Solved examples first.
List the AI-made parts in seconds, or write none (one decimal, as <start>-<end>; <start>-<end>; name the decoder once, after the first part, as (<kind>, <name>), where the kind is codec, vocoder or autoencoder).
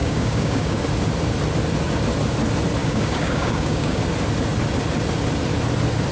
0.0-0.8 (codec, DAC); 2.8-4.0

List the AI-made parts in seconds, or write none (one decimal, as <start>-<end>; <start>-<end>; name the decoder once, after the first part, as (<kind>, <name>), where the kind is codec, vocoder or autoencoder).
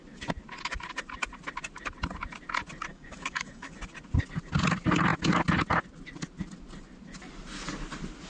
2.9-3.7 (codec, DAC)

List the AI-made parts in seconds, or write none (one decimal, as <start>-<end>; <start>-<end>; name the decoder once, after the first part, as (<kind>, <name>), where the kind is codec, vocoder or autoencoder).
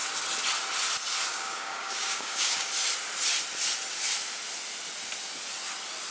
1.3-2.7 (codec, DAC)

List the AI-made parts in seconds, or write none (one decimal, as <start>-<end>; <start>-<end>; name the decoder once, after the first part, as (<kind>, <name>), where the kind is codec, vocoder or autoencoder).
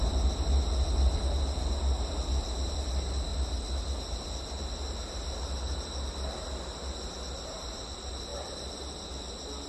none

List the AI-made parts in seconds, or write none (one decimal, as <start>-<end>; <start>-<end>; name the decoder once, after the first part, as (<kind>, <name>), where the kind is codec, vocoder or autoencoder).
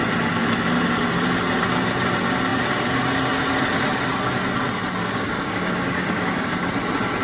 5.0-6.7 (codec, DAC)